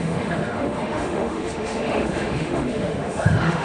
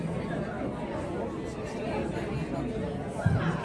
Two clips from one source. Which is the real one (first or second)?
second